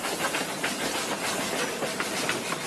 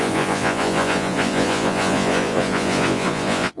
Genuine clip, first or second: first